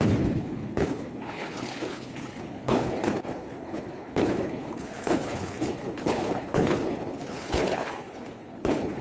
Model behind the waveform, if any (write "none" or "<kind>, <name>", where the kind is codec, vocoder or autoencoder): codec, HILCodec